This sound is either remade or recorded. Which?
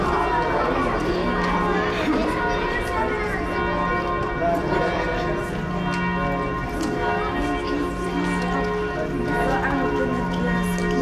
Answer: recorded